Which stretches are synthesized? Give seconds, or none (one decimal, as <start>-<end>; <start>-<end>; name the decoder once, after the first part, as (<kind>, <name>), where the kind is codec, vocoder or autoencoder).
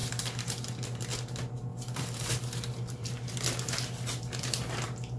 0.0-1.0 (vocoder, BigVGAN v2); 1.7-3.1